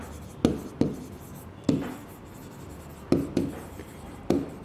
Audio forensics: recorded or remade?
recorded